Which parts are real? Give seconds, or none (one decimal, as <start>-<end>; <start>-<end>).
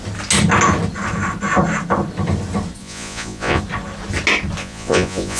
0.0-2.8; 3.6-4.6